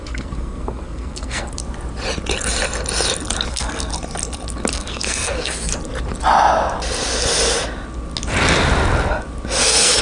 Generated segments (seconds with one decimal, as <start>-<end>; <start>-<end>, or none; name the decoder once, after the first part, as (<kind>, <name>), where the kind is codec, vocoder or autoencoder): 0.0-1.6 (codec, SNAC); 3.5-3.9; 4.7-5.7; 9.6-10.0